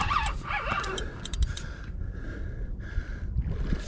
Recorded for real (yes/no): yes